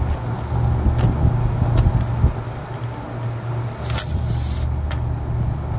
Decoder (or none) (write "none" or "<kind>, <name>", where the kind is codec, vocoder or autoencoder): none